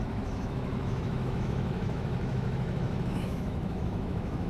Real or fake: fake